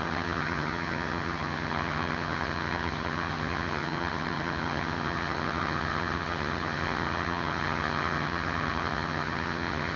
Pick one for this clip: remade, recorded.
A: remade